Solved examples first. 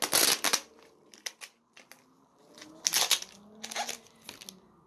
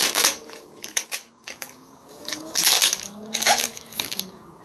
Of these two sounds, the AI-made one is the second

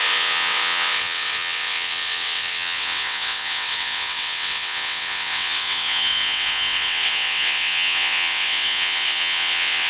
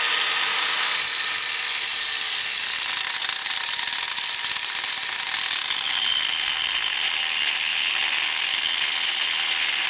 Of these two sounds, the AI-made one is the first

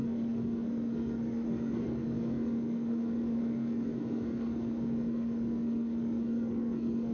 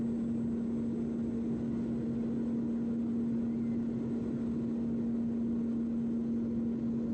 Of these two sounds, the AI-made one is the first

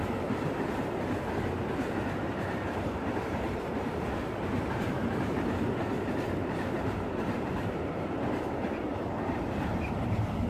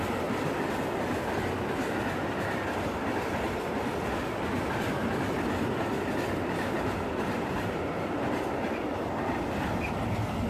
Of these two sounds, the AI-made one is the first